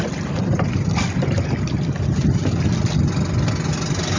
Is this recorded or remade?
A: recorded